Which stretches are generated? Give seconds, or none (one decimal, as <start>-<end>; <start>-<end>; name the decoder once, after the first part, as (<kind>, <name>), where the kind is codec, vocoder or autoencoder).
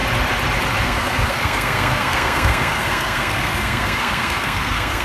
0.8-5.0 (codec, SNAC)